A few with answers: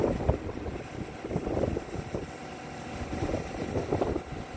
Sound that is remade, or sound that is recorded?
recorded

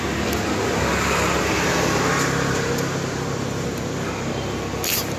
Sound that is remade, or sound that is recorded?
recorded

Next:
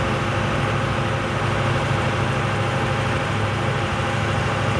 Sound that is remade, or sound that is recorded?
recorded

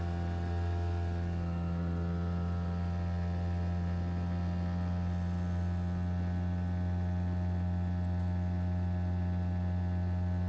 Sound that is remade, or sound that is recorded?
recorded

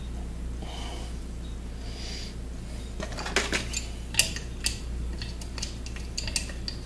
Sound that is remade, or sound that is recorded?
recorded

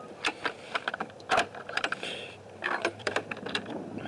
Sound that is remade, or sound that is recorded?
remade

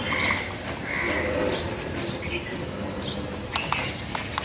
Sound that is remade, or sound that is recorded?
recorded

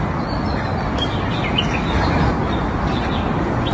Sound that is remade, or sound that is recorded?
recorded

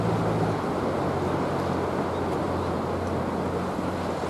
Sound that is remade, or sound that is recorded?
recorded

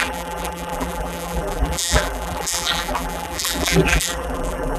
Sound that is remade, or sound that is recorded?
remade